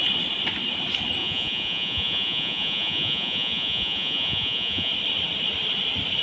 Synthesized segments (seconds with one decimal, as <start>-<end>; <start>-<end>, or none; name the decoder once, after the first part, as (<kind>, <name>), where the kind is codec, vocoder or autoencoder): 1.2-4.9 (vocoder, Vocos)